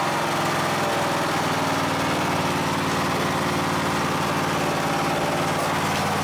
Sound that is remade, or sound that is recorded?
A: recorded